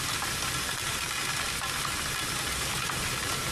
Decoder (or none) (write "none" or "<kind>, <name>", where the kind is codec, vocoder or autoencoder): none